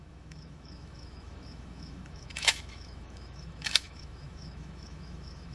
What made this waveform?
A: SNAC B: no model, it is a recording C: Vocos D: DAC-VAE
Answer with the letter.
D